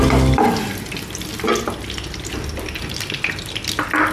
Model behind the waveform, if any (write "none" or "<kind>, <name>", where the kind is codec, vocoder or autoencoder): none